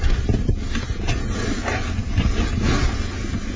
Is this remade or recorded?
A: recorded